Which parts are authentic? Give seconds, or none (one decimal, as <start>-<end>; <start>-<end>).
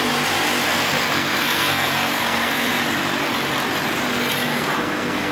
0.0-0.7; 2.8-4.5